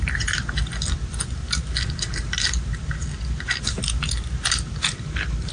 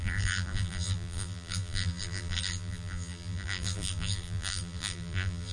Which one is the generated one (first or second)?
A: second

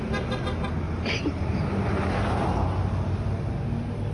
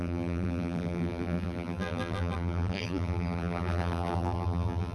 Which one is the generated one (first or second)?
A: second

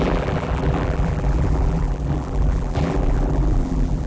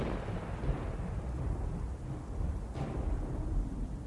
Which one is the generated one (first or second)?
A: first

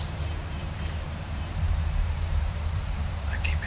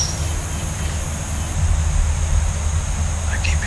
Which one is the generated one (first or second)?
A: first